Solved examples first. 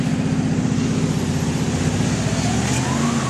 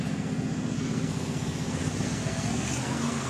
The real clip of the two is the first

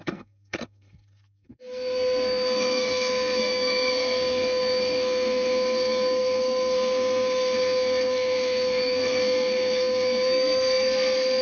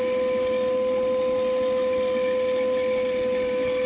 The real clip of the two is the second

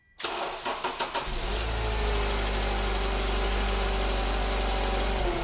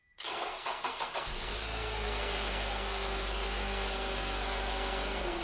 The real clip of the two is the first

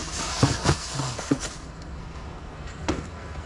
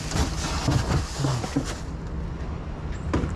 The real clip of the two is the second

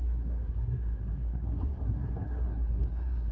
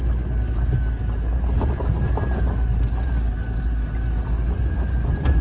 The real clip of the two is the second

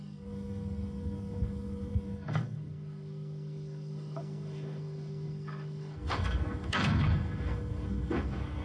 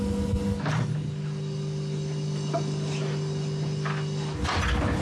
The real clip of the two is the second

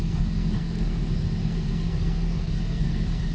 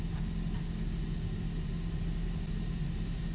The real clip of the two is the second